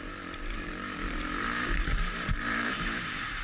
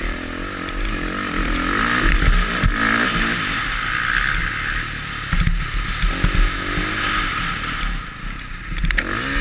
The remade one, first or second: first